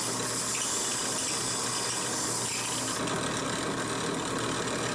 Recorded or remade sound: recorded